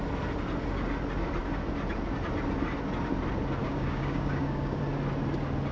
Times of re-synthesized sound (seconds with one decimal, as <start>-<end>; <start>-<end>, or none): 3.6-4.8

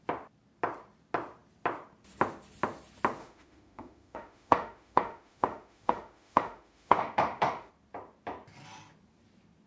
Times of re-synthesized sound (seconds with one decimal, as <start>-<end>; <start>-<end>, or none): 3.2-7.7

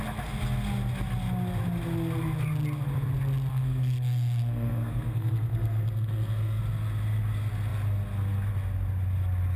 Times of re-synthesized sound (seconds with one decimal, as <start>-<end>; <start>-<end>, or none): 3.5-6.6

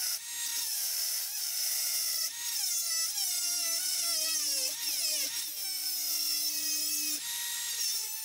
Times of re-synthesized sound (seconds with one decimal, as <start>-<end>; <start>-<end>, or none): 0.5-1.2; 1.9-2.7

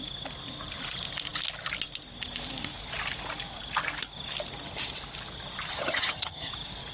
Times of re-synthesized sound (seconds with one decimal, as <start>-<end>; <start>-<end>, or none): 5.7-6.5